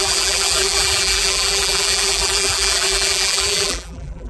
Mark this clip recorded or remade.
remade